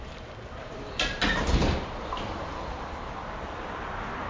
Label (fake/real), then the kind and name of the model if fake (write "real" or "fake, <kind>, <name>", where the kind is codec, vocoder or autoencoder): fake, vocoder, BigVGAN v2